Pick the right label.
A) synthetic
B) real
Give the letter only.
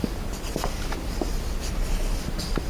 A